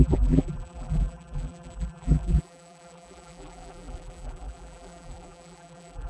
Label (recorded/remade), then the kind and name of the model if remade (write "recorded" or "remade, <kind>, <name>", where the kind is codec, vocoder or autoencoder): remade, vocoder, BigVGAN v2